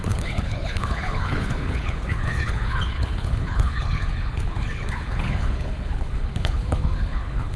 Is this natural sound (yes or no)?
no